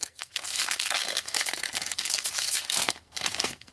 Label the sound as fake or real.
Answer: fake